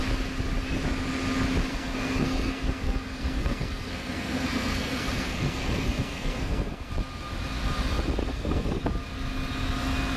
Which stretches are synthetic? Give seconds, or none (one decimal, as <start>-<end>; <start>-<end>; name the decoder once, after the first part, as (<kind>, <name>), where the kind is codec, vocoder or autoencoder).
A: 1.7-6.9 (codec, SNAC); 8.2-8.8